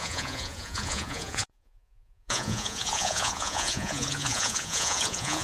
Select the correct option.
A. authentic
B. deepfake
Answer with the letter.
B